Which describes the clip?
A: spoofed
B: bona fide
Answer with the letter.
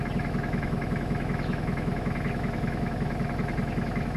A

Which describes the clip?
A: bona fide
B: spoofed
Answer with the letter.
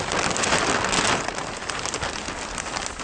A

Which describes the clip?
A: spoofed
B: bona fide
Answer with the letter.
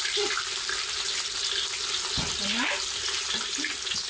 B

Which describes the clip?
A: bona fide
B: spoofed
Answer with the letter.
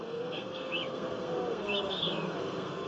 B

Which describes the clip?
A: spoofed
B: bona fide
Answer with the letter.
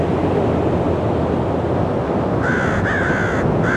B